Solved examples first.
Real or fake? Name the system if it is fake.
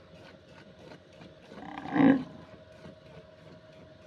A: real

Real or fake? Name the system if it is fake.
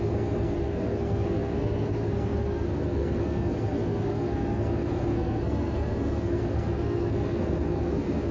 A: fake, codec, SNAC